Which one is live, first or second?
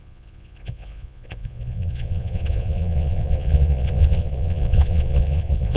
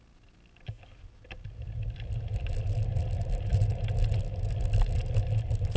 second